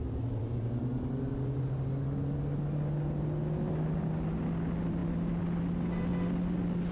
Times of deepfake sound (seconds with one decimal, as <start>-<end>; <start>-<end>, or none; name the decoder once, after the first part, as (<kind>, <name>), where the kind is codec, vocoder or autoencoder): none